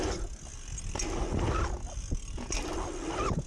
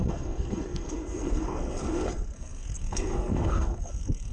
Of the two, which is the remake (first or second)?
second